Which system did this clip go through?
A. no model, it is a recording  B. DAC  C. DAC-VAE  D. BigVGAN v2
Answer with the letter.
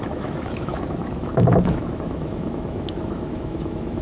C